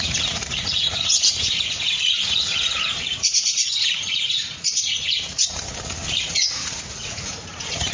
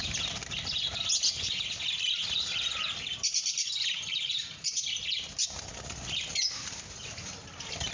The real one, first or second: second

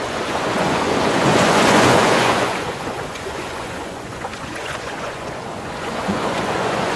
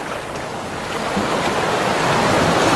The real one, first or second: second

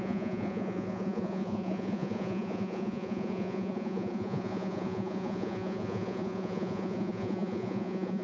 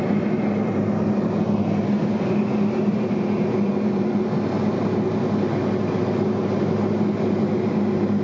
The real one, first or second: second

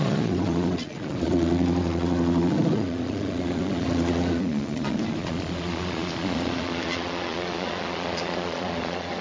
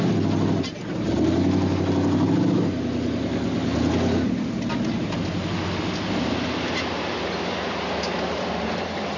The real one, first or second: second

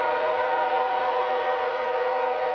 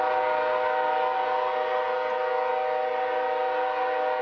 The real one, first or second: second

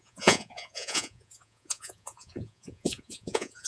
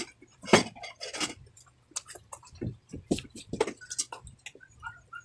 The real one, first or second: second